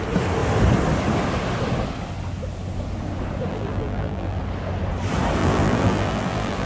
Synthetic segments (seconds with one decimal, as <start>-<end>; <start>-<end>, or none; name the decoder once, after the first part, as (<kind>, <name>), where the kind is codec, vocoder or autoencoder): 3.5-4.4 (vocoder, BigVGAN v2); 5.4-6.7